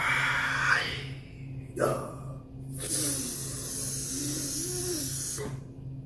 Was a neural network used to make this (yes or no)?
no